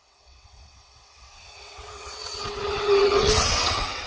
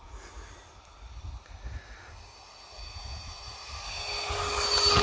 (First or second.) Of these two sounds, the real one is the second